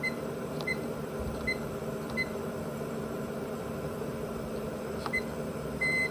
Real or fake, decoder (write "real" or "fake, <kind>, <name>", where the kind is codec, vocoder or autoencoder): fake, vocoder, BigVGAN v2